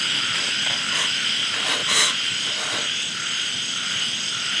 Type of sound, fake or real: real